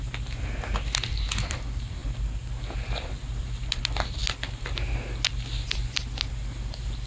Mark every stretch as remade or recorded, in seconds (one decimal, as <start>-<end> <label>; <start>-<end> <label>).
0.0-7.1 recorded

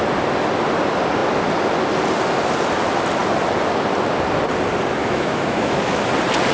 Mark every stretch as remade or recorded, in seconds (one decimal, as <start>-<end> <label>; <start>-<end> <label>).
0.0-5.0 recorded; 5.0-6.1 remade; 6.1-6.5 recorded